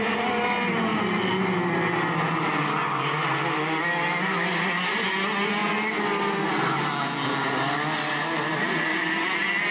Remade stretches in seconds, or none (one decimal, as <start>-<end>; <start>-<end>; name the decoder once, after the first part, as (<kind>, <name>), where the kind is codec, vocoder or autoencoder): none